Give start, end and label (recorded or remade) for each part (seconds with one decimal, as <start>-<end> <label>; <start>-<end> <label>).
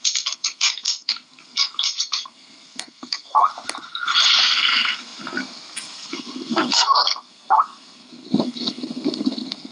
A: 0.0-3.5 remade; 3.5-4.4 recorded; 4.4-9.7 remade